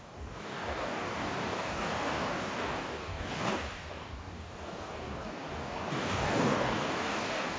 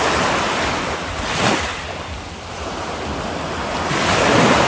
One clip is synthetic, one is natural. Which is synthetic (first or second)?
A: first